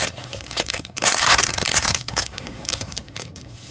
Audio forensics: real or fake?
fake